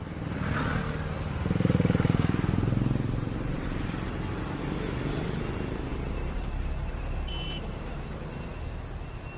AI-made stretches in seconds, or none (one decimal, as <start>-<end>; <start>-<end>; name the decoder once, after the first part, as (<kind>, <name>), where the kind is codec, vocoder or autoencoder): 5.9-7.3 (vocoder, BigVGAN v2)